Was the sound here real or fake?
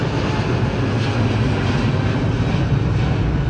real